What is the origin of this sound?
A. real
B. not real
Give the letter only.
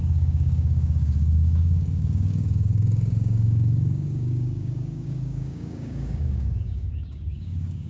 B